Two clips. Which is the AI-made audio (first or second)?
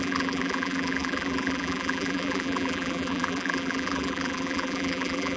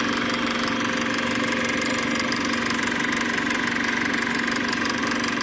first